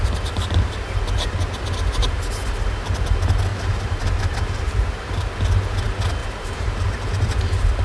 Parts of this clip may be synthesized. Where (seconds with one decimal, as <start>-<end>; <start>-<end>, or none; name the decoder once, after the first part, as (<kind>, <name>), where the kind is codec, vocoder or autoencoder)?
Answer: 3.5-5.3 (vocoder, BigVGAN v2); 6.2-6.9

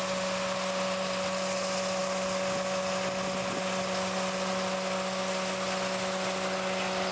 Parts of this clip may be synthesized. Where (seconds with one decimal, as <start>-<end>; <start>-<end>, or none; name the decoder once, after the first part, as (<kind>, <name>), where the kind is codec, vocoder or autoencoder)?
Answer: none

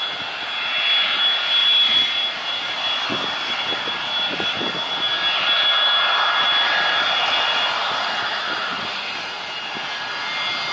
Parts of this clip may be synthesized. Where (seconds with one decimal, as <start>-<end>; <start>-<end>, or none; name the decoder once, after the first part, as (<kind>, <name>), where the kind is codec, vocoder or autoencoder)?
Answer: 1.6-3.9 (vocoder, BigVGAN v2); 8.3-9.4